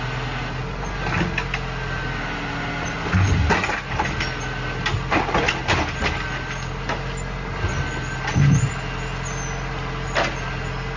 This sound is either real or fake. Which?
real